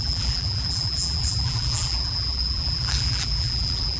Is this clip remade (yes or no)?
yes